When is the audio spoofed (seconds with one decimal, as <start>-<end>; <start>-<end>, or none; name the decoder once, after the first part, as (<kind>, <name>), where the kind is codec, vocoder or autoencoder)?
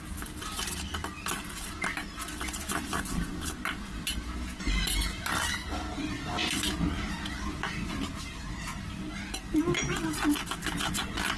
none